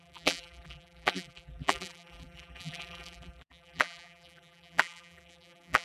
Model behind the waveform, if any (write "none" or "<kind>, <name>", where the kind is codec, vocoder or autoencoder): vocoder, BigVGAN v2